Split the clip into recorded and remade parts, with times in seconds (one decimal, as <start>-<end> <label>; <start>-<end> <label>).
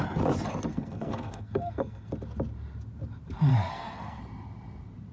0.0-0.7 recorded; 0.7-2.1 remade; 2.1-3.5 recorded; 3.5-4.2 remade; 4.2-5.1 recorded